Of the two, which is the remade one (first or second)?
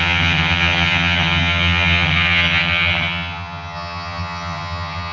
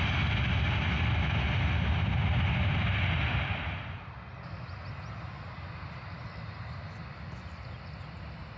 first